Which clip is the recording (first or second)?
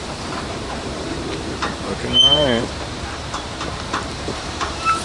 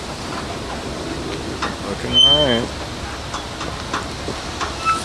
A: second